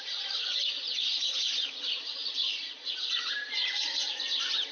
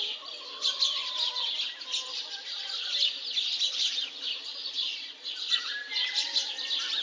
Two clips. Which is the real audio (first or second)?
second